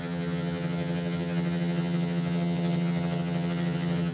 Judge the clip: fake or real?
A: fake